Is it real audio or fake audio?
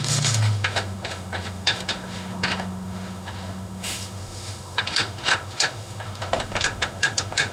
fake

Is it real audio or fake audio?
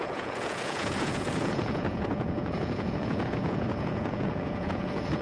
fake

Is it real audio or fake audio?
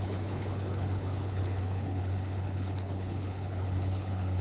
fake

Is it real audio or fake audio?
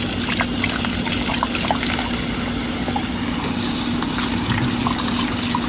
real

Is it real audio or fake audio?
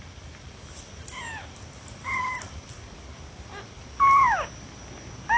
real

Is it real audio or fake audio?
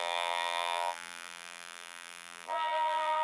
fake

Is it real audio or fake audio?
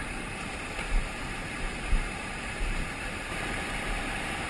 fake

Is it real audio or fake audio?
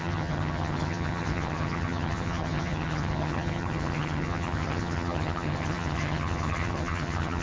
fake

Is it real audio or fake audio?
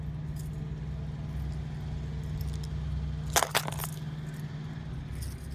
real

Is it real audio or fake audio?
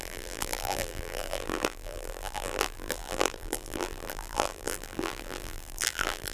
fake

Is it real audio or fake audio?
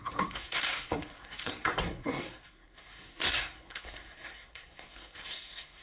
fake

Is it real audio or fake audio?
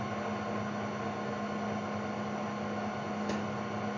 real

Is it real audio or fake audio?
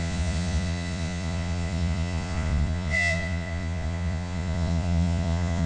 fake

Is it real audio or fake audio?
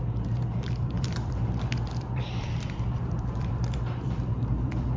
fake